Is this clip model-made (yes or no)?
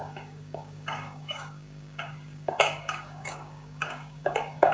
yes